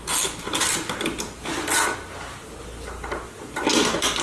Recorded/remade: recorded